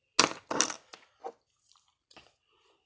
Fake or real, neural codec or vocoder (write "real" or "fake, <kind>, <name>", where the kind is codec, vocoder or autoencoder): real